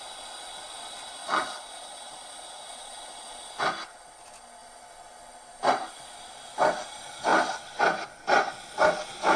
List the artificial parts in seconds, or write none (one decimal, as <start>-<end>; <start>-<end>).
1.2-3.5